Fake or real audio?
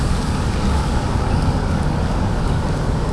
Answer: fake